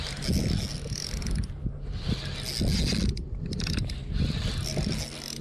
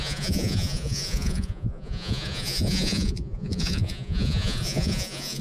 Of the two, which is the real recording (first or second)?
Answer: first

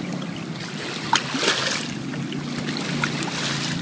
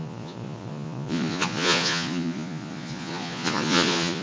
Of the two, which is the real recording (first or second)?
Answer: first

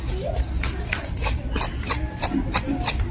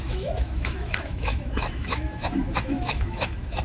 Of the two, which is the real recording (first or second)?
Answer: first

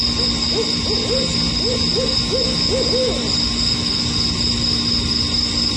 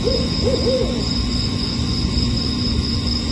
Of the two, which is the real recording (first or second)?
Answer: first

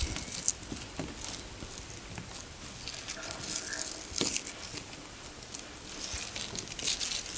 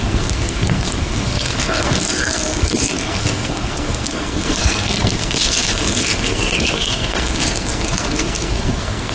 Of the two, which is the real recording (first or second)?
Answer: first